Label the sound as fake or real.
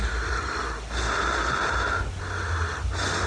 real